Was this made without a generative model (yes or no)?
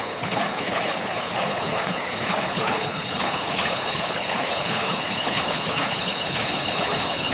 no